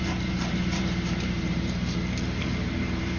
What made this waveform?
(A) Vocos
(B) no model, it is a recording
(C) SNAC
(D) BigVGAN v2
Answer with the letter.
D